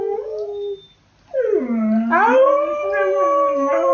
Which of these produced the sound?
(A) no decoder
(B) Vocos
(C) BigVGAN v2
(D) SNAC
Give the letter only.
A